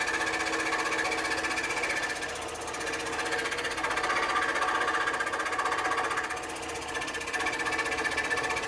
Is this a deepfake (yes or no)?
no